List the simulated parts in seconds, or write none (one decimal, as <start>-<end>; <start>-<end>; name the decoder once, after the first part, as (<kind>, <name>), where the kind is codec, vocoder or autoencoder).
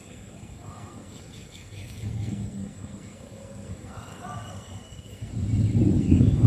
0.0-5.3 (codec, SNAC); 6.0-6.5